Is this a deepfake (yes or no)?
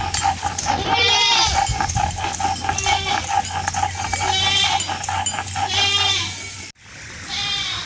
no